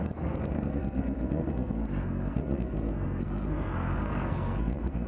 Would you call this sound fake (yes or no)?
yes